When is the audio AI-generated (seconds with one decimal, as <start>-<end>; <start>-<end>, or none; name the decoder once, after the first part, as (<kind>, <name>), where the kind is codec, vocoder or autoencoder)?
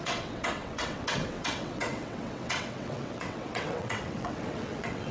0.0-5.1 (vocoder, WaveNeXt)